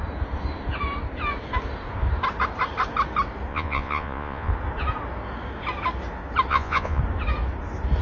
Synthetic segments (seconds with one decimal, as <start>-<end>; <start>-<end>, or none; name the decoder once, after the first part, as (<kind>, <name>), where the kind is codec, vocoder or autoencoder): 3.5-4.5 (vocoder, Vocos); 6.5-7.0